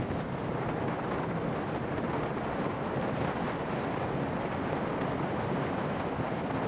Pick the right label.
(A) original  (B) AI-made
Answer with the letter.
A